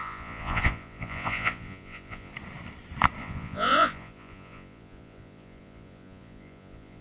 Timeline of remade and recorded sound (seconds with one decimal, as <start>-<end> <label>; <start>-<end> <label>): 0.0-2.3 remade; 2.3-3.2 recorded; 3.2-7.0 remade